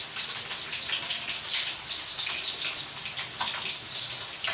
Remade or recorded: recorded